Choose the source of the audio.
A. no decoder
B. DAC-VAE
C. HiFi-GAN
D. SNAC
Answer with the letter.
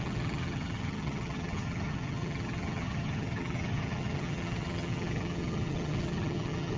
C